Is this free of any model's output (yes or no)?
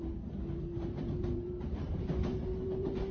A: no